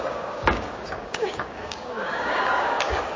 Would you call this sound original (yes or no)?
no